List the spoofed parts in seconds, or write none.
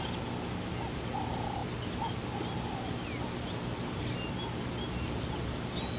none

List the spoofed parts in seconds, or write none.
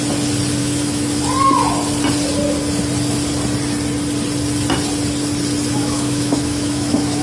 0.6-1.2 (autoencoder, DAC-VAE); 5.8-7.2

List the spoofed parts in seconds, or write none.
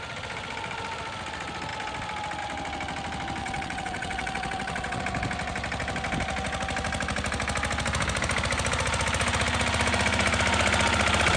3.4-5.0 (vocoder, WaveNeXt)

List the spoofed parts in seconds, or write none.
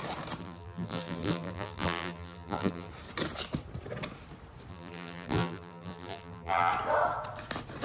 0.4-2.9 (vocoder, BigVGAN v2); 4.7-6.7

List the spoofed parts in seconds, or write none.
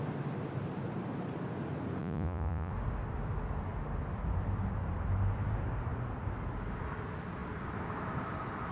2.0-2.7 (vocoder, Vocos)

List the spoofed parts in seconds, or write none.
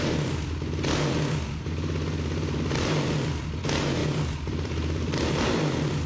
4.0-5.4 (vocoder, BigVGAN v2)